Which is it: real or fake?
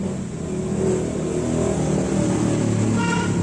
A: real